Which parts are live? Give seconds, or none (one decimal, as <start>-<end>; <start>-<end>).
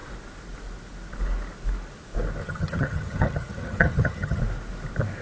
0.0-2.4; 4.4-5.2